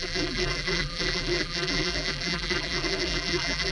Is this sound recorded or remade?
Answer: remade